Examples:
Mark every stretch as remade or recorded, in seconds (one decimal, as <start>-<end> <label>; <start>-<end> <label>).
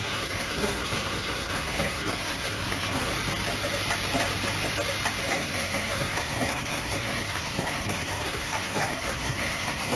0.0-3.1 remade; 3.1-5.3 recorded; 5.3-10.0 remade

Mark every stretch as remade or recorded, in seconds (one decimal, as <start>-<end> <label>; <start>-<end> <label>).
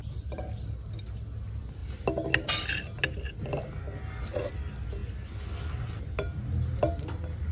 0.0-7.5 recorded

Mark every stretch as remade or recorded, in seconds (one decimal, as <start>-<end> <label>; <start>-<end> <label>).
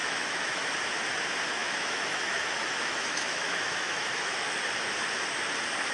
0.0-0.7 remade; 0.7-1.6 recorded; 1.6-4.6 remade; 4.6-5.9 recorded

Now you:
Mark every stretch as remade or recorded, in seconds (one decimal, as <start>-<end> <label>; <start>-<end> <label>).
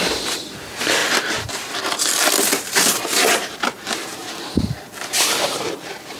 0.0-4.2 remade; 4.2-5.2 recorded; 5.2-6.2 remade